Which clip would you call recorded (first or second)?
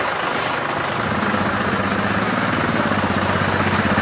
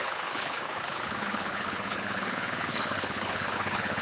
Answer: first